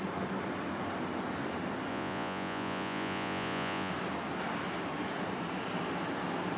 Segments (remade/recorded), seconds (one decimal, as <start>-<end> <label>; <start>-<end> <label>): 0.0-1.9 recorded; 1.9-3.9 remade; 3.9-6.6 recorded